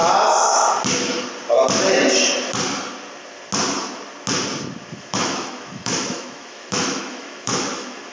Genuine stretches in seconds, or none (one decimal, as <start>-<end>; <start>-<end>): 0.0-4.9